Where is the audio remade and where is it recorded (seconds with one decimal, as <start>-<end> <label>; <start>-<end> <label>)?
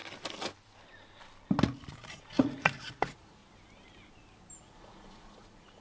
0.0-1.9 recorded; 1.9-3.4 remade; 3.4-4.6 recorded; 4.6-5.8 remade